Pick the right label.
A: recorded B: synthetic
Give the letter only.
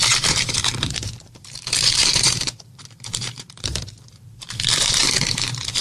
B